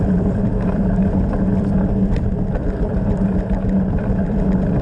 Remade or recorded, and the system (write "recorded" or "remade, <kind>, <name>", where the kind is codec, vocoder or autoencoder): remade, vocoder, BigVGAN v2